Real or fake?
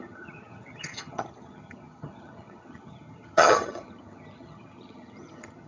fake